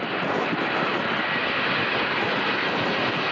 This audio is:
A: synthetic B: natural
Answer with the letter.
B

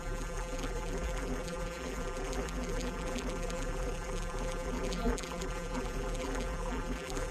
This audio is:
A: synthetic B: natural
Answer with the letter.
A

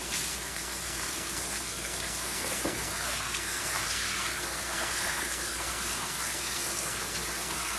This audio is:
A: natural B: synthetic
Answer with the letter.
B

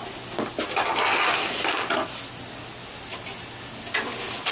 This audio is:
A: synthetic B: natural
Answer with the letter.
B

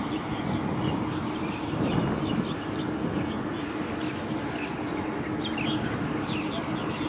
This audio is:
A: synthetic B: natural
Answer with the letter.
B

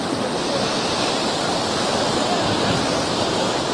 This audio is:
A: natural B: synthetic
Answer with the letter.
A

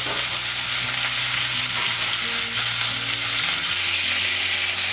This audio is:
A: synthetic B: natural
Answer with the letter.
B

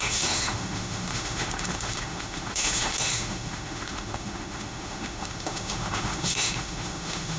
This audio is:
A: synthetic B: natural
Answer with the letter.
A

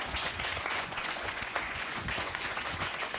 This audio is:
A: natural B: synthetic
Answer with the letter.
B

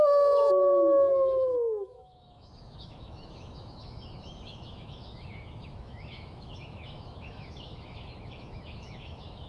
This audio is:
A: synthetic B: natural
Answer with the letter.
A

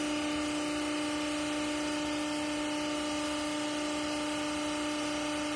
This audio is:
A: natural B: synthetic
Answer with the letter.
A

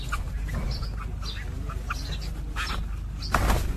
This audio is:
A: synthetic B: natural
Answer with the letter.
B